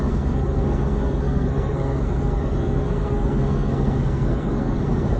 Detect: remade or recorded remade